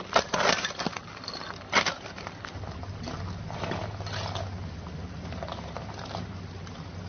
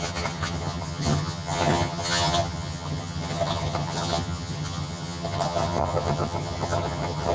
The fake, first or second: second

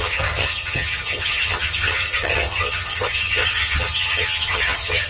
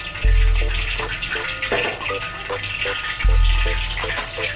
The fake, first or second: first